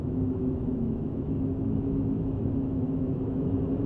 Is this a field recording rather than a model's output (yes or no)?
no